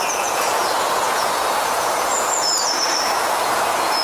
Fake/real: fake